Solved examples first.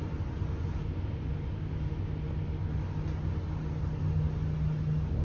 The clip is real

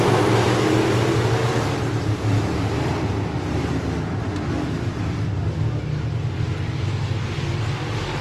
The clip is real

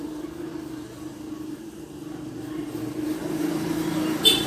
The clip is fake